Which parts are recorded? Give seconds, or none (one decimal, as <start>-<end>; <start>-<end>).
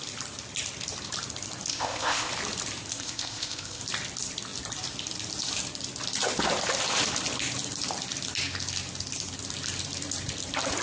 0.0-1.7; 2.3-2.9; 3.8-10.8